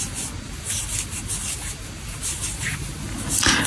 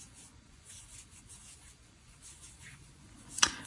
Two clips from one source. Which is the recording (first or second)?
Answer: first